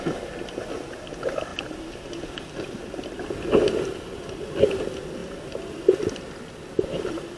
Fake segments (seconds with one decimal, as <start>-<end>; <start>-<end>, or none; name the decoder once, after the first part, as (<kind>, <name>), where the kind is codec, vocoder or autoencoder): none

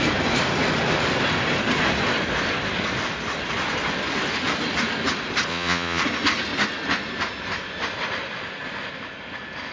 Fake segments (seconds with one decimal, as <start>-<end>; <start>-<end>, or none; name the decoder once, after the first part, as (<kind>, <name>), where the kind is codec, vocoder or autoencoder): 5.5-6.0 (vocoder, Vocos)

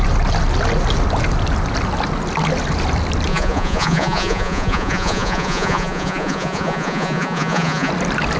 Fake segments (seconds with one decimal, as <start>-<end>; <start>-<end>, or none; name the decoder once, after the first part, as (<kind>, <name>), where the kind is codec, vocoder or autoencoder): 3.3-7.9 (vocoder, Vocos)

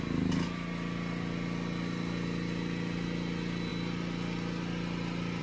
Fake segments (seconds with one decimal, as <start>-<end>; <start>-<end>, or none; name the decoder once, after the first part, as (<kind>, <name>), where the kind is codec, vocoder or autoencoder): none

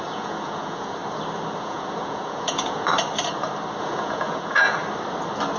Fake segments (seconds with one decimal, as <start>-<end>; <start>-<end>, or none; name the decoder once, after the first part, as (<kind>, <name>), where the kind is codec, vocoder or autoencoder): 0.0-1.0 (vocoder, Vocos); 1.6-2.9; 3.8-4.8

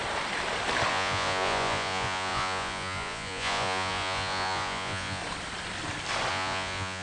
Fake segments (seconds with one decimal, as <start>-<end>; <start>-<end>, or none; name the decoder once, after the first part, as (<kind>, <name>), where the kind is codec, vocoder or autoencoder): 0.9-5.2 (vocoder, Vocos); 6.3-7.0

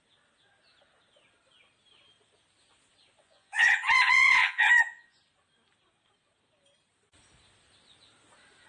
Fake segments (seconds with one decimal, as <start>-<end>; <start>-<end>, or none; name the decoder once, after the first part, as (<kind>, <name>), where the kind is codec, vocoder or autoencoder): 3.2-5.2 (vocoder, Vocos)

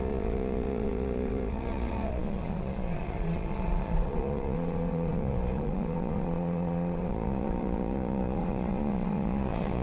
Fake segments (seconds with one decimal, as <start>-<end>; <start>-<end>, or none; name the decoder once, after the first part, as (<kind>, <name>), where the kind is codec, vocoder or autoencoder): 0.0-9.8 (vocoder, Vocos)